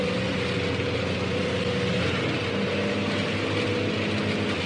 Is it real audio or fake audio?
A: real